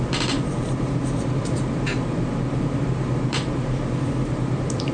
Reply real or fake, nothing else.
fake